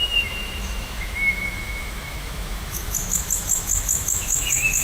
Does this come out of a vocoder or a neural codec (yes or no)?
yes